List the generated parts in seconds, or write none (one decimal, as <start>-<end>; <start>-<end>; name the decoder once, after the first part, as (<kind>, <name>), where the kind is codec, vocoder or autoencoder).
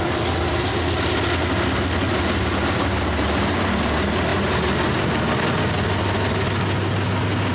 none